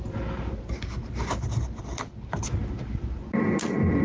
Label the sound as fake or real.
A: real